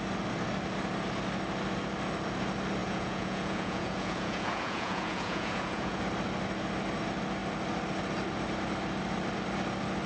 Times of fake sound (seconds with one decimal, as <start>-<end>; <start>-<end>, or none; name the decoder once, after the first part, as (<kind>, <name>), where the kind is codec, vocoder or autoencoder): 2.8-6.0 (vocoder, Vocos)